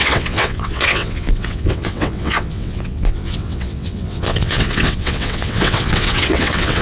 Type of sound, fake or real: fake